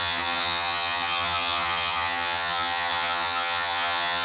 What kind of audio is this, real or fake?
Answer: fake